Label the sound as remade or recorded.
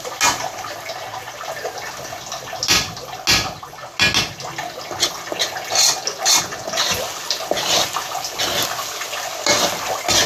recorded